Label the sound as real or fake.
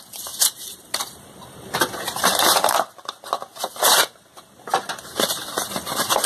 fake